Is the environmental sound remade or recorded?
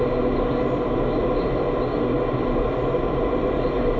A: recorded